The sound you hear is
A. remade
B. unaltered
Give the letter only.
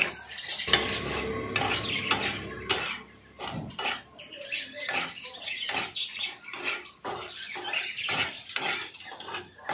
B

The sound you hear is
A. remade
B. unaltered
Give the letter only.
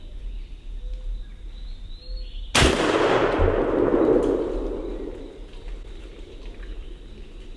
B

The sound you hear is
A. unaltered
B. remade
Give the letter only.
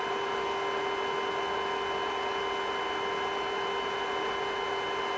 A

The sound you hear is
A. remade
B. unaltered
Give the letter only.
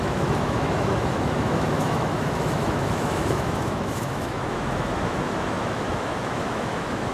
A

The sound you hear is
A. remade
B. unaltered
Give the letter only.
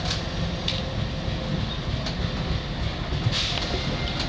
B